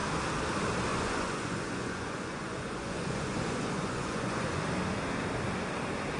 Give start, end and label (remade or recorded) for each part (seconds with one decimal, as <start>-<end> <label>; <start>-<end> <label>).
0.0-0.9 recorded; 0.9-4.6 remade; 4.6-6.2 recorded